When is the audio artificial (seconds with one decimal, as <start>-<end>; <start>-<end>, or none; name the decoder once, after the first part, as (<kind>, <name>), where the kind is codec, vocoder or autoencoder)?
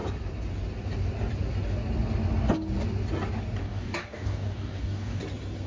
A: 3.6-5.2 (codec, DAC)